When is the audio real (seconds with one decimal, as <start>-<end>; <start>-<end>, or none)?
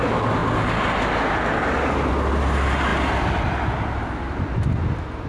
0.0-5.3